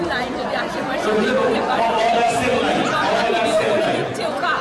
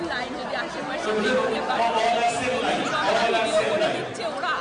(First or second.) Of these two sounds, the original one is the second